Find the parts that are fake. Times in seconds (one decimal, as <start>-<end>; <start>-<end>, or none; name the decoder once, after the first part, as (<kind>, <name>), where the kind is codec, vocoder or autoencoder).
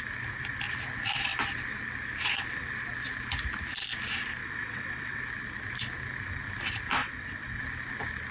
4.4-5.2 (vocoder, WaveNeXt); 7.0-7.6